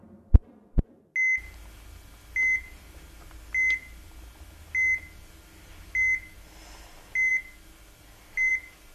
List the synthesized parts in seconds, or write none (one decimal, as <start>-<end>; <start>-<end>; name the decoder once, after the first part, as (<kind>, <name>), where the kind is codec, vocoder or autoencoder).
none